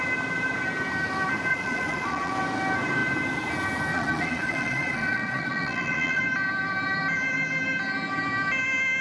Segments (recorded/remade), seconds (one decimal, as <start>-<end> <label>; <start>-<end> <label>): 0.0-1.5 recorded; 1.5-2.3 remade; 2.3-3.9 recorded; 3.9-6.2 remade; 6.2-9.0 recorded